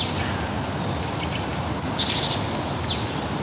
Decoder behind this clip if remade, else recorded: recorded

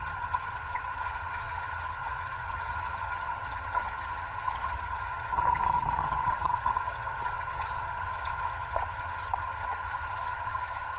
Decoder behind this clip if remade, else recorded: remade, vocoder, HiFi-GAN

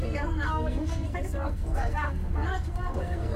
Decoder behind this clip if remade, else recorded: remade, codec, SNAC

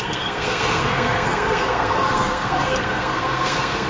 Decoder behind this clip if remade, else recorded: remade, codec, SNAC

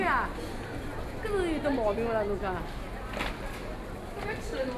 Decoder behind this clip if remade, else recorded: recorded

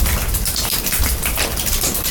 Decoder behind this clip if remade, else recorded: recorded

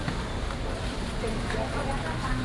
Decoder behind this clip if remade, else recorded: remade, vocoder, BigVGAN v2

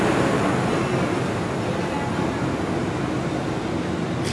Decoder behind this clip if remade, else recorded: recorded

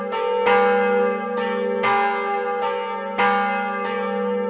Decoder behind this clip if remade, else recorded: recorded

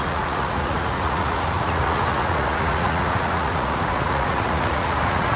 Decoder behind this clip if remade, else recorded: remade, vocoder, Vocos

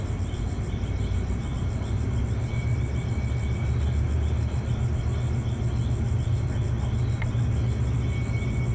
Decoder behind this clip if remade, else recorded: recorded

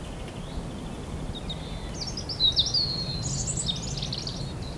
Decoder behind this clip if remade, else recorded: recorded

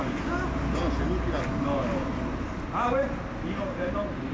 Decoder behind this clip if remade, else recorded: recorded